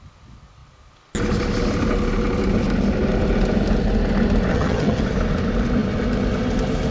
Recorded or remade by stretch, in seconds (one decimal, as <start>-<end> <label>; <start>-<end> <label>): 0.0-4.5 recorded; 4.5-5.0 remade; 5.0-6.9 recorded